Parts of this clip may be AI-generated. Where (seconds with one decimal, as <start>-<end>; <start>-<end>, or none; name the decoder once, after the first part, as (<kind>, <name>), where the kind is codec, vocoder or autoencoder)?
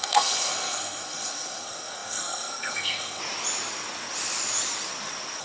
0.0-3.2 (codec, SNAC)